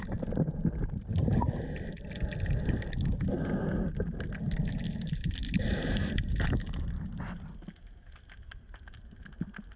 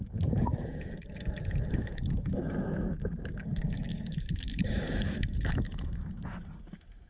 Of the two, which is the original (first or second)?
first